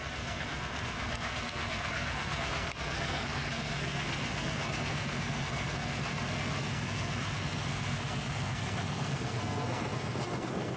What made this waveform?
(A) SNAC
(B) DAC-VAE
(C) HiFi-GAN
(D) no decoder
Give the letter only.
A